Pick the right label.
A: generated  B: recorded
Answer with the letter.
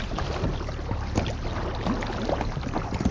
B